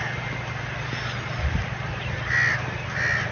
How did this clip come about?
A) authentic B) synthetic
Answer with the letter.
A